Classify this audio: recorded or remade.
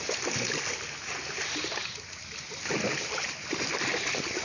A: recorded